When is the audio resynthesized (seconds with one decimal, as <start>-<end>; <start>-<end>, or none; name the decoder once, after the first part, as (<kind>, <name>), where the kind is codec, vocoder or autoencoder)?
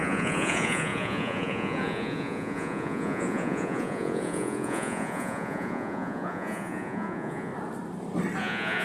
0.0-7.5 (vocoder, Vocos); 8.4-8.8